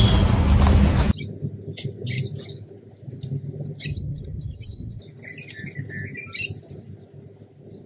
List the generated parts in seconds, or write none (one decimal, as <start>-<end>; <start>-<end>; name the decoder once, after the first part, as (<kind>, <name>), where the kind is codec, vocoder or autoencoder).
3.9-5.0 (vocoder, HiFi-GAN)